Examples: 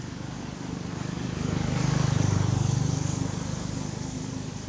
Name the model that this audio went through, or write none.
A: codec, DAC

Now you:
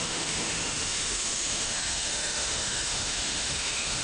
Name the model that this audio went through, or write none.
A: autoencoder, DAC-VAE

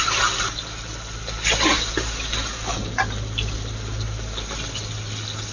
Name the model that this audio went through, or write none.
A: none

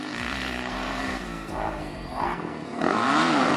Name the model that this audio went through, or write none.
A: codec, SNAC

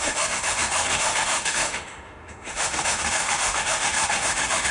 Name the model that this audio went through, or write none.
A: autoencoder, DAC-VAE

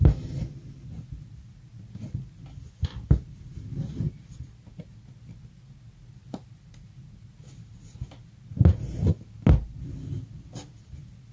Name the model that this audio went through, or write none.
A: none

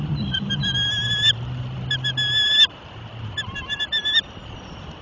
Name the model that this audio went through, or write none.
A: none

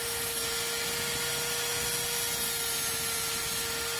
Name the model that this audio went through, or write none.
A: none